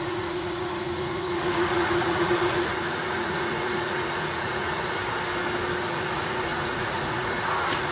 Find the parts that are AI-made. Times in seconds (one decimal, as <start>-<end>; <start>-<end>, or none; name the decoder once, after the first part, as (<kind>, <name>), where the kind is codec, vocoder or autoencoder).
0.0-5.0 (vocoder, Vocos); 5.8-7.9